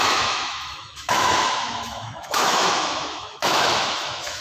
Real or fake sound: fake